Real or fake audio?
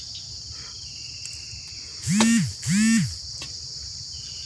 real